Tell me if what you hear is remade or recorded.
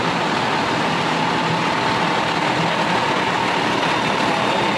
recorded